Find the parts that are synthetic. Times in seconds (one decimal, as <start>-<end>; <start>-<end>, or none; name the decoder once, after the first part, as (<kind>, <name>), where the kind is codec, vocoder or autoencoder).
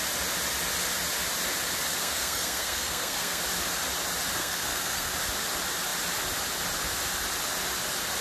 2.0-3.4 (codec, SNAC); 4.4-5.1